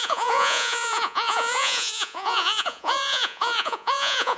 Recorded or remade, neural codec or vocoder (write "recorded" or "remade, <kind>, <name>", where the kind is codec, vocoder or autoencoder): remade, vocoder, Vocos